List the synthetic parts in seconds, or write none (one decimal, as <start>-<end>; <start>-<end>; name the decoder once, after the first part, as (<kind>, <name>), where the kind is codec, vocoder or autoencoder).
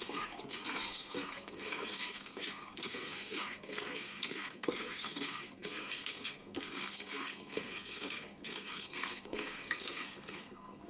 0.0-10.9 (codec, SNAC)